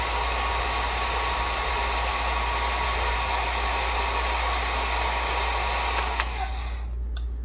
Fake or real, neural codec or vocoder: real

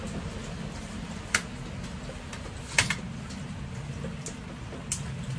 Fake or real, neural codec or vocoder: real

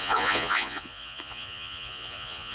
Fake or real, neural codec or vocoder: fake, vocoder, Vocos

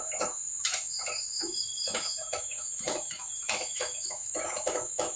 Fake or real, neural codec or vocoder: fake, autoencoder, DAC-VAE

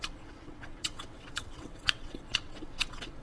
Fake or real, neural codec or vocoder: fake, vocoder, WaveNeXt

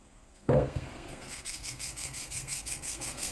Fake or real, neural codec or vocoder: fake, codec, SNAC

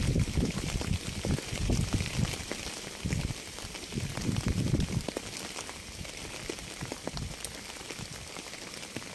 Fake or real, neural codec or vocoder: fake, vocoder, BigVGAN v2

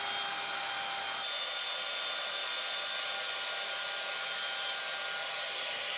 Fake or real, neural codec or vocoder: real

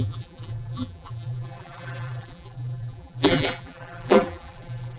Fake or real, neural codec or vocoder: fake, vocoder, BigVGAN v2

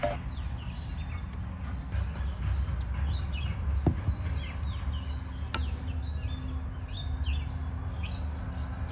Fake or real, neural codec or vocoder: real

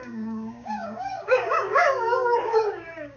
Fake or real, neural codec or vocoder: fake, codec, DAC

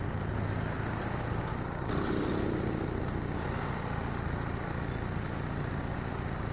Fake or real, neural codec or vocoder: real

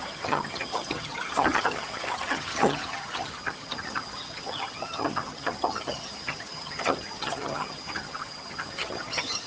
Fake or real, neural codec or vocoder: fake, vocoder, HiFi-GAN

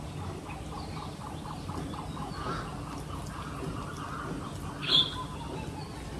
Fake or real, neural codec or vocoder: real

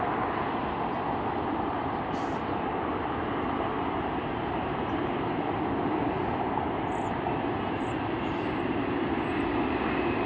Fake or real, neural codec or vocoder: real